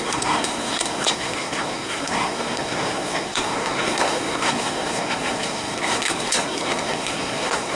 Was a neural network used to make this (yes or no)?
yes